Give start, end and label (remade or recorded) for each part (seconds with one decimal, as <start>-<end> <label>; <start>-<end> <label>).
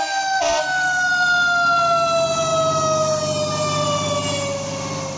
0.0-5.2 recorded